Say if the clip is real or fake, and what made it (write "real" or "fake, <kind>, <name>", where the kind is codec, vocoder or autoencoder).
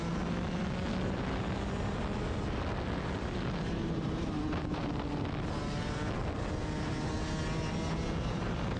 real